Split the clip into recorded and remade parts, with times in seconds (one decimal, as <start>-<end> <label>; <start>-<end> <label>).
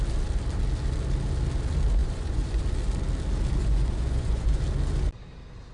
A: 0.0-2.0 recorded; 2.0-2.6 remade; 2.6-3.6 recorded; 3.6-4.6 remade; 4.6-5.7 recorded